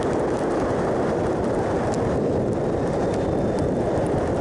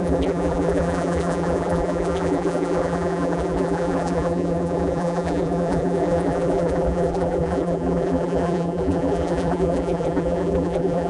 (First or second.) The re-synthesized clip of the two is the second